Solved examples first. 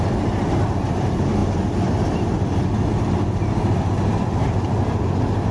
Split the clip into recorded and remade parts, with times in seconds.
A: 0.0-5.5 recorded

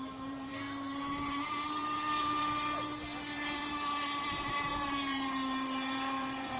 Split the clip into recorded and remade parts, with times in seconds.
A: 0.0-6.6 remade

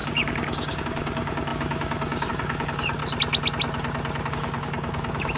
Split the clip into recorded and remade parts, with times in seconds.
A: 0.0-3.0 remade; 3.0-4.3 recorded; 4.3-5.4 remade

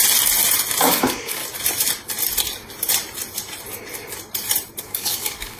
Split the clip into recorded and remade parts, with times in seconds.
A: 0.0-0.8 recorded; 0.8-1.4 remade; 1.4-4.8 recorded; 4.8-5.6 remade

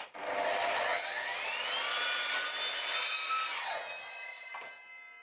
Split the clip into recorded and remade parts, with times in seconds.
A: 0.0-5.2 recorded

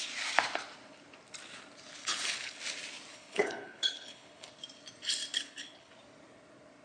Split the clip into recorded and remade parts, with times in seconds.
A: 0.0-2.0 recorded; 2.0-2.6 remade; 2.6-3.1 recorded; 3.1-4.5 remade; 4.5-5.3 recorded; 5.3-5.9 remade; 5.9-6.8 recorded